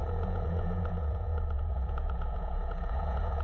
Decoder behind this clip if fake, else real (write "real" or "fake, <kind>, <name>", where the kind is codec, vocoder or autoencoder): fake, vocoder, Vocos